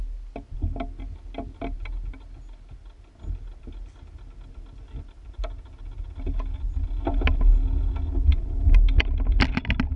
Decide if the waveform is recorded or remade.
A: recorded